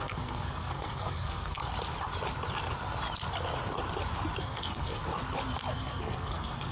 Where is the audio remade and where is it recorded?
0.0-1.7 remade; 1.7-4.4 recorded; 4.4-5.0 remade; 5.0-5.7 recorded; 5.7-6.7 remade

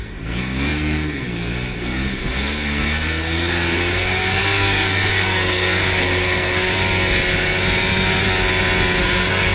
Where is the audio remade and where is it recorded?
0.0-6.7 remade; 6.7-9.0 recorded; 9.0-9.5 remade

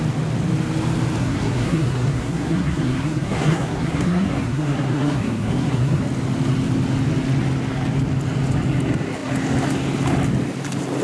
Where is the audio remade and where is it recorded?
0.0-1.2 recorded; 1.2-6.0 remade; 6.0-11.0 recorded

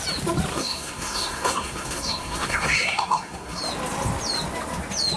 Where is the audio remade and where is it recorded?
0.0-0.5 recorded; 0.5-3.6 remade; 3.6-5.2 recorded

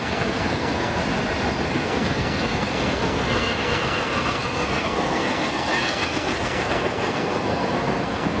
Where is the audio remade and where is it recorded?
0.0-1.0 remade; 1.0-1.7 recorded; 1.7-8.4 remade

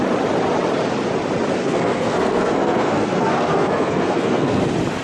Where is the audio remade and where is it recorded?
0.0-1.6 recorded; 1.6-4.6 remade; 4.6-5.0 recorded

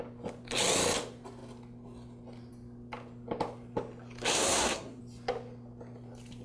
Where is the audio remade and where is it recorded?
0.0-4.3 recorded; 4.3-5.0 remade; 5.0-6.4 recorded